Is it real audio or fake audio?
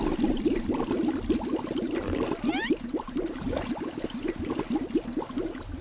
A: real